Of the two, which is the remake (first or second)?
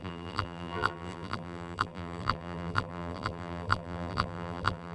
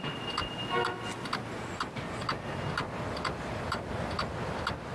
first